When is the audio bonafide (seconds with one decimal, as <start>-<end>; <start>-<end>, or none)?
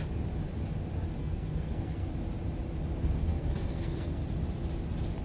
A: 0.0-1.2; 2.1-3.3; 4.2-5.2